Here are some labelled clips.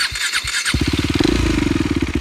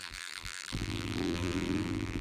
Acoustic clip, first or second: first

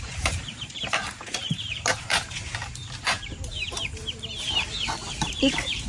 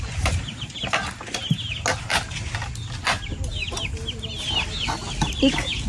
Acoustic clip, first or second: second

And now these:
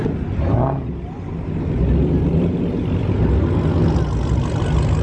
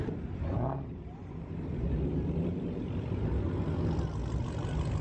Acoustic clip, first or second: first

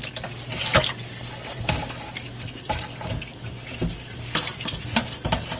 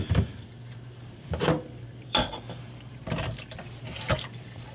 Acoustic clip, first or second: first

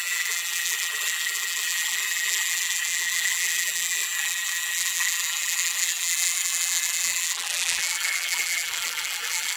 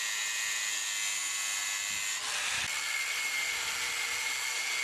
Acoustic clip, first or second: second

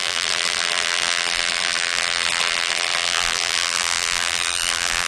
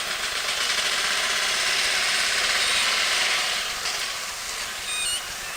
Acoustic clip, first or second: second